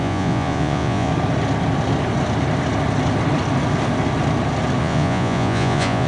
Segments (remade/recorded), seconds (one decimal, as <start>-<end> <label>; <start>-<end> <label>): 0.0-1.1 remade; 1.1-4.8 recorded; 4.8-6.1 remade